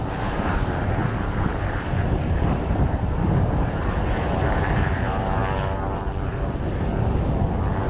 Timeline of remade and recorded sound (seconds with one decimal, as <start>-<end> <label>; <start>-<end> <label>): 0.0-5.4 remade; 5.4-7.5 recorded; 7.5-7.9 remade